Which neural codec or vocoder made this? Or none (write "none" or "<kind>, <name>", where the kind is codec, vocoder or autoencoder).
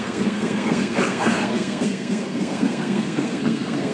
codec, SNAC